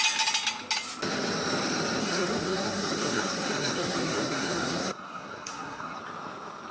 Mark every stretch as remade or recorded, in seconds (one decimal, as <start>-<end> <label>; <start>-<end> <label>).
0.0-2.0 recorded; 2.0-6.0 remade; 6.0-6.7 recorded